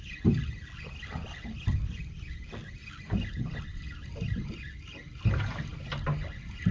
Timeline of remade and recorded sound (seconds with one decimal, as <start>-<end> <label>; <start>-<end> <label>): 0.0-6.7 recorded